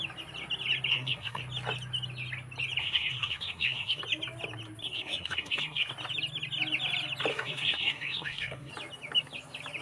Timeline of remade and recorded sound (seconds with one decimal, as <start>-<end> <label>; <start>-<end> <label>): 0.0-0.9 recorded; 0.9-1.4 remade; 1.4-2.8 recorded; 2.8-4.0 remade; 4.0-4.8 recorded; 4.8-5.9 remade; 5.9-7.3 recorded; 7.3-8.7 remade; 8.7-9.8 recorded